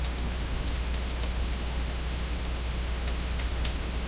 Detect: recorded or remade remade